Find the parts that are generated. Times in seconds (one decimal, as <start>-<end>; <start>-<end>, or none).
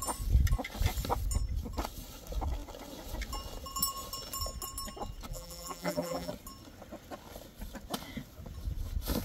5.3-6.3